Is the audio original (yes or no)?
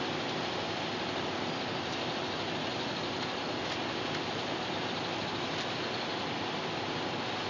yes